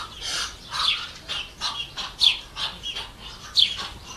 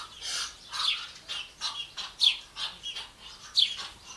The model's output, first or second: first